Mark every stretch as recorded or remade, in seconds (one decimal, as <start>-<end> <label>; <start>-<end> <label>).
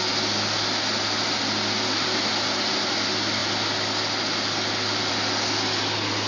0.0-6.3 recorded